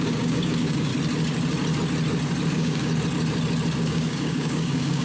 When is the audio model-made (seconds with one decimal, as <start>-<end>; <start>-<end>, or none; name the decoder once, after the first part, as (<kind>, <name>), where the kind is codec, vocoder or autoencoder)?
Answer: 0.0-0.9 (codec, DAC); 2.5-2.9; 3.8-5.0